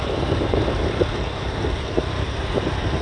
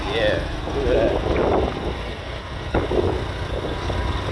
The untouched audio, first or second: second